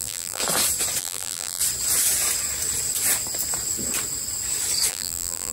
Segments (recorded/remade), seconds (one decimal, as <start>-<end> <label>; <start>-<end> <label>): 0.0-0.4 remade; 0.4-1.0 recorded; 1.0-1.6 remade; 1.6-4.9 recorded; 4.9-5.5 remade